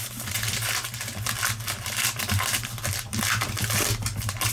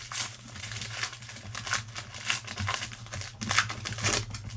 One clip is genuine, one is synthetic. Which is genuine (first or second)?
second